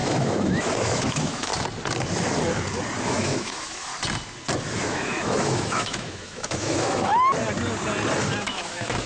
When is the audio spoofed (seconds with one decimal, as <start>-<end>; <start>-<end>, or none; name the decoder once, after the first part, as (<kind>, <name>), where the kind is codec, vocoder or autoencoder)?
0.0-1.5 (autoencoder, DAC-VAE); 3.0-3.9; 4.8-7.1; 8.4-9.1